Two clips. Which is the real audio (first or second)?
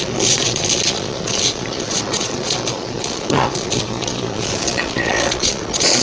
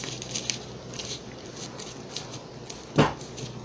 second